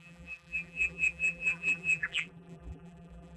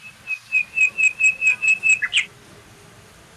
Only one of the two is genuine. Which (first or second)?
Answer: second